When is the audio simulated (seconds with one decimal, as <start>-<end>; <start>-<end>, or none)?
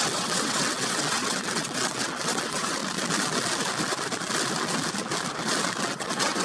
0.0-2.8; 5.8-6.4